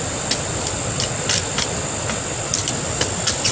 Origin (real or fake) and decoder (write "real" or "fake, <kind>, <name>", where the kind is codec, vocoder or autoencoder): real